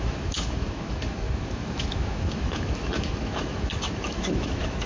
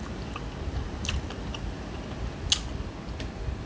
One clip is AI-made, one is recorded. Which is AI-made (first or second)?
first